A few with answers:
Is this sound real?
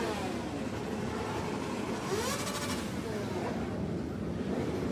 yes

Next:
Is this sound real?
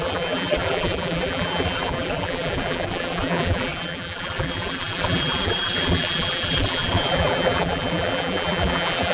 no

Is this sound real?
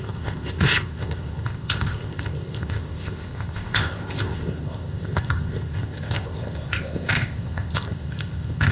no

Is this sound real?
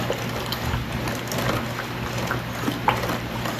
yes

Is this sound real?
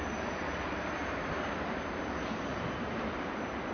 no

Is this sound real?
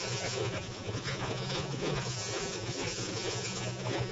no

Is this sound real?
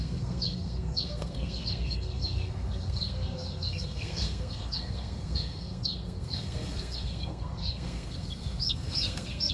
no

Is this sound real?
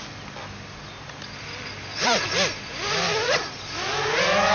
yes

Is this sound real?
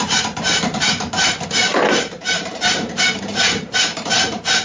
no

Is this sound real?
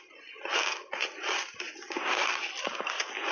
yes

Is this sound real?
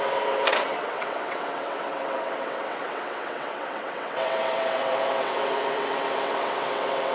no